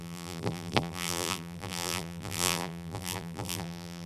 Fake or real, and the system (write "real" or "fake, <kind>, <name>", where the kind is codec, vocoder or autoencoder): fake, vocoder, BigVGAN v2